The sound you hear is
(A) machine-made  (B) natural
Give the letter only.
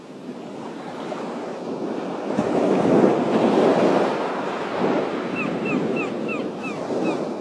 B